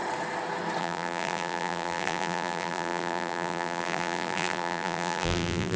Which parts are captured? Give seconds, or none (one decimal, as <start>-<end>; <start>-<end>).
0.0-0.8